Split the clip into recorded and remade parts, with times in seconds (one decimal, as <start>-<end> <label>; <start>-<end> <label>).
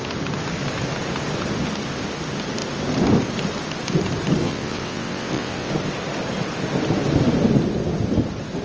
0.0-4.4 recorded; 4.4-5.7 remade; 5.7-8.6 recorded